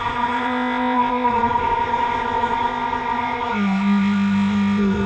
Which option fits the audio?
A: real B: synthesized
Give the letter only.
B